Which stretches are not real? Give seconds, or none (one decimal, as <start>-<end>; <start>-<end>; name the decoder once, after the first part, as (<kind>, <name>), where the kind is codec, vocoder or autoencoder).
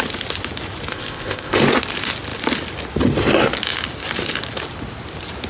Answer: 0.9-1.6 (codec, ZipCodec)